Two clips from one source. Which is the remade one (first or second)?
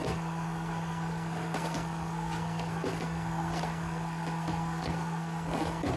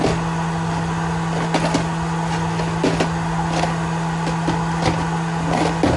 first